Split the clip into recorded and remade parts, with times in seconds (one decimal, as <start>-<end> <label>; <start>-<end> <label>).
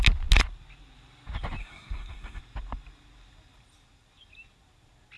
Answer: 0.0-1.6 recorded; 1.6-2.4 remade; 2.4-5.2 recorded